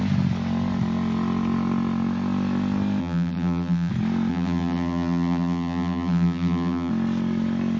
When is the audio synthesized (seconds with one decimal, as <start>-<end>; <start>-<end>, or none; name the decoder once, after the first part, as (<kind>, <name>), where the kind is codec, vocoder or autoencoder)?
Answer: 3.0-3.9 (vocoder, BigVGAN v2); 4.3-6.9